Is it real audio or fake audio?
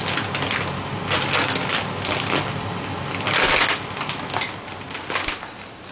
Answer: real